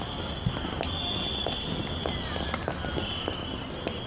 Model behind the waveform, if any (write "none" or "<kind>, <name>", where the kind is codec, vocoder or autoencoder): none